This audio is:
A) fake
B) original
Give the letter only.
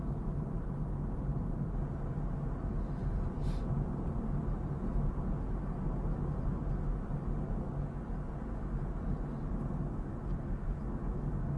B